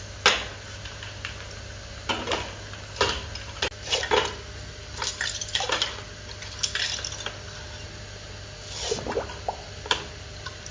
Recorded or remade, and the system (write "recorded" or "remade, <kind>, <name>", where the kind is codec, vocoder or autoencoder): recorded